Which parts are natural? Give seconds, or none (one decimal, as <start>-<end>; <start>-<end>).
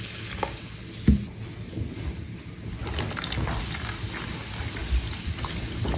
0.0-6.0